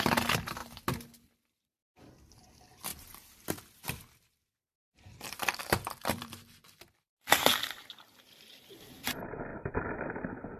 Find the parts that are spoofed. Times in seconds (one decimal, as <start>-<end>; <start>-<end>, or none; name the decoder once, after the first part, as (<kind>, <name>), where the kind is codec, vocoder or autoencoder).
0.6-1.7 (vocoder, BigVGAN v2); 2.9-7.1; 9.5-10.6